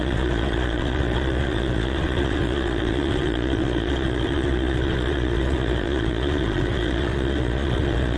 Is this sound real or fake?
fake